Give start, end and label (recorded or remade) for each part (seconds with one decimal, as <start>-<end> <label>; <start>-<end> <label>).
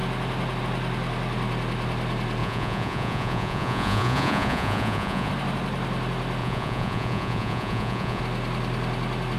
0.0-2.4 recorded; 2.4-5.3 remade; 5.3-6.4 recorded; 6.4-8.2 remade; 8.2-9.4 recorded